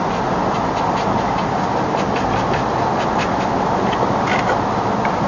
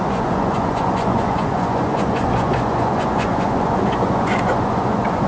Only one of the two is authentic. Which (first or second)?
first